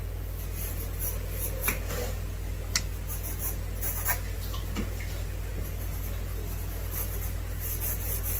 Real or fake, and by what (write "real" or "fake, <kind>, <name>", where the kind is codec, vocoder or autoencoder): real